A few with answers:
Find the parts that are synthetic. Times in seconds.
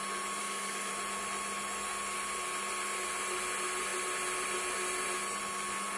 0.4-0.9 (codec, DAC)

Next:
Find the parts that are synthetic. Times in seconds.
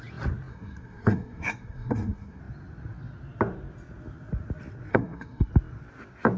0.5-2.4 (codec, SNAC); 4.9-5.5